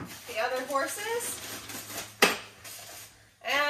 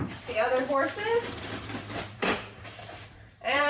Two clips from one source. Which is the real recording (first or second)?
first